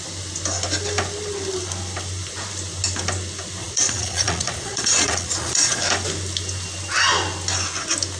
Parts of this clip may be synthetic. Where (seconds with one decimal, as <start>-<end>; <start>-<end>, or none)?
3.6-5.8